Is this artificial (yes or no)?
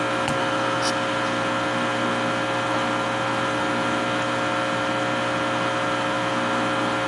no